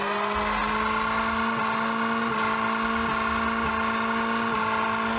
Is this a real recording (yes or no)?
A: yes